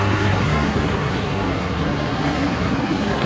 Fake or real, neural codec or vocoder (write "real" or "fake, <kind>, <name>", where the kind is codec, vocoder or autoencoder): fake, codec, SNAC